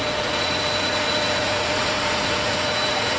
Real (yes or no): no